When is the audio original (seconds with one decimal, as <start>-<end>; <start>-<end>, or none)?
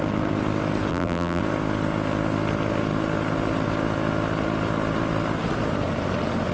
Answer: 0.0-0.9; 1.4-6.5